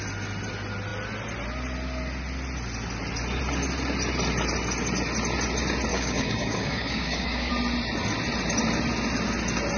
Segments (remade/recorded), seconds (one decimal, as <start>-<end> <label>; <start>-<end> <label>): 0.0-5.9 recorded; 5.9-7.5 remade; 7.5-9.8 recorded